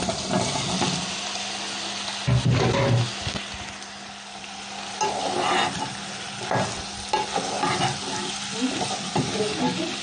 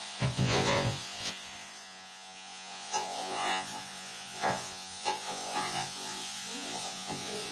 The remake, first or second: second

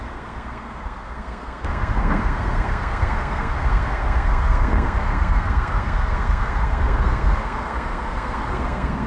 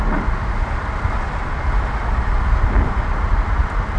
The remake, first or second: first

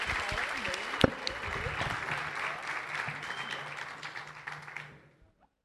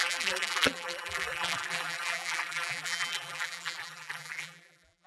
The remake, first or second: second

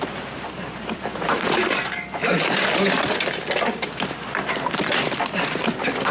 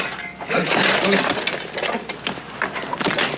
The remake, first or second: first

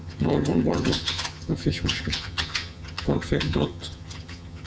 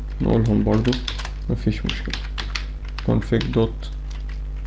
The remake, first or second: first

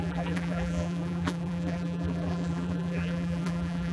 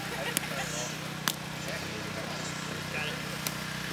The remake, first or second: first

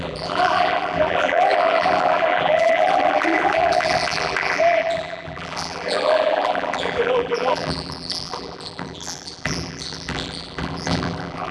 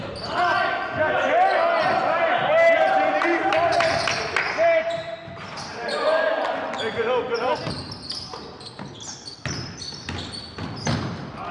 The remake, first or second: first